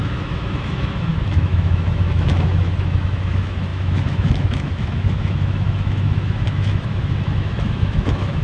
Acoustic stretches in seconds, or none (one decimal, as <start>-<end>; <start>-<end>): none